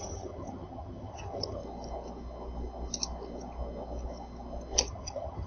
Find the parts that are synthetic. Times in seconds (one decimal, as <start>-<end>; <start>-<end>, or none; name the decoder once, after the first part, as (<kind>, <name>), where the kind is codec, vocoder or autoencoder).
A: 0.0-1.6 (vocoder, HiFi-GAN); 4.9-5.5